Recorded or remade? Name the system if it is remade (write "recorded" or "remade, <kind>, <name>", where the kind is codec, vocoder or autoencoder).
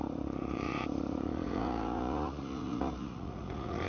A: remade, vocoder, Vocos